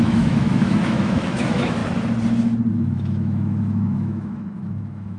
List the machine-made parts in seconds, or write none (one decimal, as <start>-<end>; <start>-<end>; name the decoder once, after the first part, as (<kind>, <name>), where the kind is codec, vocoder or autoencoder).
0.0-1.8 (autoencoder, DAC-VAE); 2.7-5.2